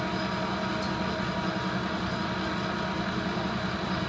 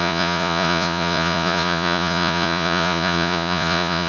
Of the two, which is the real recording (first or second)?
first